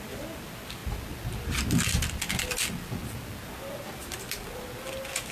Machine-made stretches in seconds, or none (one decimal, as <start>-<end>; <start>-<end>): none